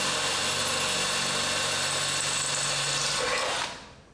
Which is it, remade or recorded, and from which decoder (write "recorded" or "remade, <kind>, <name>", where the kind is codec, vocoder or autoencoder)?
recorded